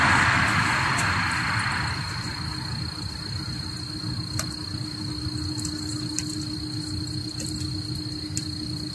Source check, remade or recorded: recorded